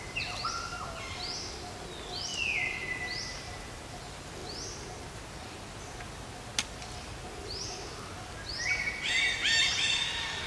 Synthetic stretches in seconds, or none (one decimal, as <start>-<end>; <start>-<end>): none